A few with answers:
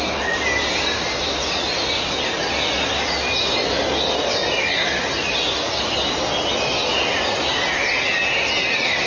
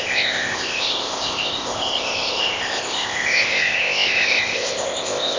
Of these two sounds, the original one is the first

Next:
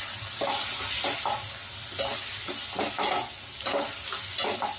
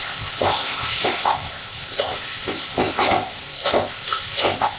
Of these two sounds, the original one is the first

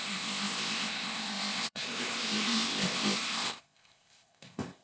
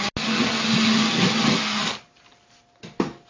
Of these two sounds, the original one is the second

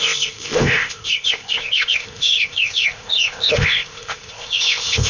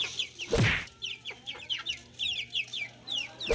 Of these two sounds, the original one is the second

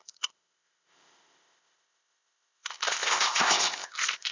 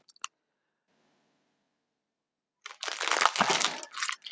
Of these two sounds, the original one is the second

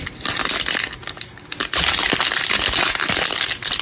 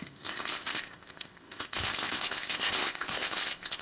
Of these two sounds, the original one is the first